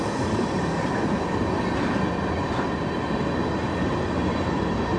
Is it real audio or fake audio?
real